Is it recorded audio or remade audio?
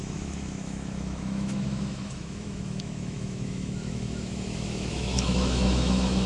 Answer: remade